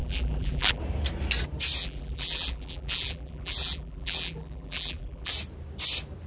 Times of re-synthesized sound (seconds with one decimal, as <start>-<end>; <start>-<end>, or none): 0.0-0.8; 1.8-5.3